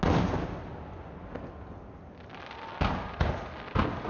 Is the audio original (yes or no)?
yes